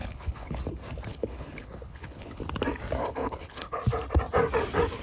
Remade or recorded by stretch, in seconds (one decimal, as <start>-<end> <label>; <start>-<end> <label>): 0.0-0.6 remade; 0.6-1.1 recorded; 1.1-2.4 remade; 2.4-3.0 recorded; 3.0-3.8 remade; 3.8-5.0 recorded